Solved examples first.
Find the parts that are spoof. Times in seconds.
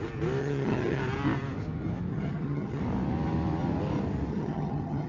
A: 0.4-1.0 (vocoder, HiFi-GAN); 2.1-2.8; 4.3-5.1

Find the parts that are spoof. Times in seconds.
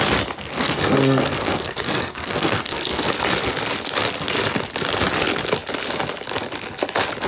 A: 0.4-3.0 (codec, SNAC)